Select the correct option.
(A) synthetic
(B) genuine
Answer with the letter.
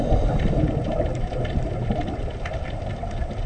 B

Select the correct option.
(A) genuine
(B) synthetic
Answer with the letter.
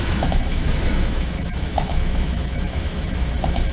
B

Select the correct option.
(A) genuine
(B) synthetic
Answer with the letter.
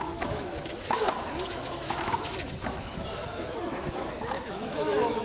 B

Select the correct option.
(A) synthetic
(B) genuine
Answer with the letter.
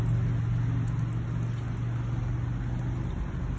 B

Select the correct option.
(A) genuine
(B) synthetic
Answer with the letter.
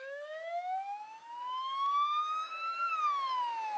B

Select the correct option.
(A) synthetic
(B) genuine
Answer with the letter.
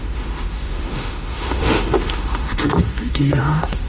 A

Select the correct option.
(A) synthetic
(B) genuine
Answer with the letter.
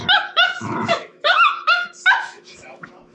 A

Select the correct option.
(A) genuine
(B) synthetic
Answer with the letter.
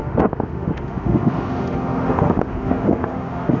B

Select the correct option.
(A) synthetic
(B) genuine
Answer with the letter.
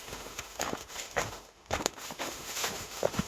A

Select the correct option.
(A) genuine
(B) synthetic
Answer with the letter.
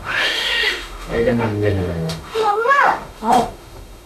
B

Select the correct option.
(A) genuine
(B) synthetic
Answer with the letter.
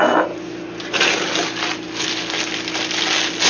A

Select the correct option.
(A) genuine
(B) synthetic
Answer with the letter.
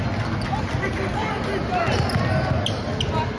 A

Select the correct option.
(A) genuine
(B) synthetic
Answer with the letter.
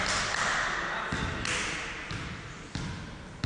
A